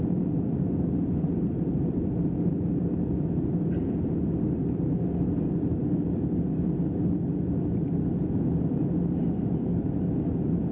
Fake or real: fake